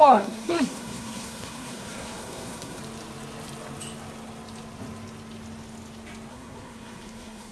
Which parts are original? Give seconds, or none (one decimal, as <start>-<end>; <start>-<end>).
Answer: 2.8-6.3